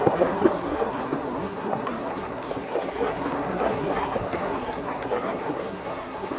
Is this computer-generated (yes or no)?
yes